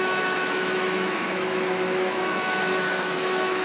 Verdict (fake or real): fake